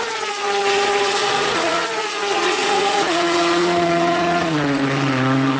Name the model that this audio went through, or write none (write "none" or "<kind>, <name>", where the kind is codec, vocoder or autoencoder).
vocoder, Vocos